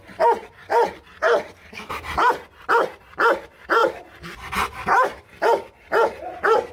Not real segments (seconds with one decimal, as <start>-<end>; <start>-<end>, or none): none